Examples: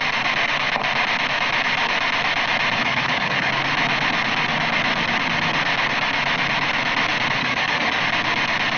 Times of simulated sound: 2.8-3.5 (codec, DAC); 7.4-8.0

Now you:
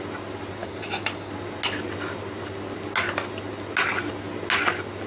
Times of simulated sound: 0.6-1.3 (codec, DAC)

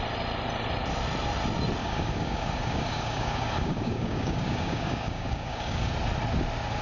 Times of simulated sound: 1.8-5.9 (codec, DAC)